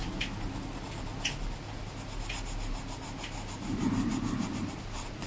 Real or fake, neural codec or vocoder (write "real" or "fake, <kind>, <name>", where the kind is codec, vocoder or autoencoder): real